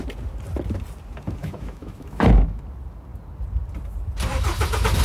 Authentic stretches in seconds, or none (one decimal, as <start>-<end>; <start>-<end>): 0.0-1.4; 2.6-5.0